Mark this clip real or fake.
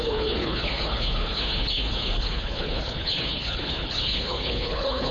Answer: fake